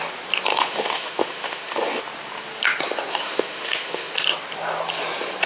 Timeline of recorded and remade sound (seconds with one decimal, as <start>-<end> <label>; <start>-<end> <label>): 0.0-0.5 recorded; 0.5-2.0 remade; 2.0-3.1 recorded; 3.1-4.1 remade; 4.1-5.5 recorded